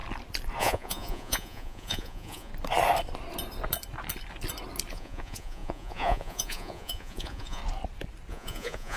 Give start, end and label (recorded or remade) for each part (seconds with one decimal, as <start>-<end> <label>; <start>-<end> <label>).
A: 0.0-0.6 recorded; 0.6-2.5 remade; 2.5-4.9 recorded; 4.9-7.6 remade; 7.6-8.3 recorded; 8.3-9.0 remade

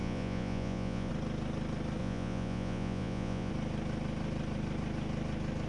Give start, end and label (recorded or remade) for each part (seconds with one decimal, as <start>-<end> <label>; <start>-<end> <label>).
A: 0.0-1.1 remade; 1.1-2.0 recorded; 2.0-3.5 remade; 3.5-5.7 recorded